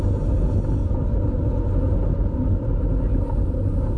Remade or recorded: recorded